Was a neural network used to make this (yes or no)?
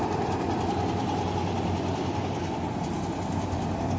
no